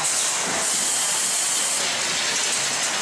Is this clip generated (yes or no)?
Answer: no